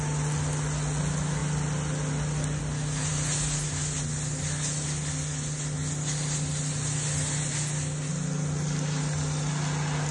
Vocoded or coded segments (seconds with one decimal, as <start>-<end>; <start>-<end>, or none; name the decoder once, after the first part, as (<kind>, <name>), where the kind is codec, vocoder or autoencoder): none